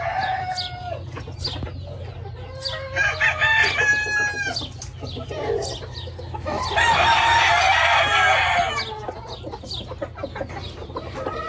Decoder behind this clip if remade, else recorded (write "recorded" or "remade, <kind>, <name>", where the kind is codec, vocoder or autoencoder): recorded